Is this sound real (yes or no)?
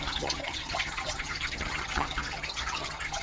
no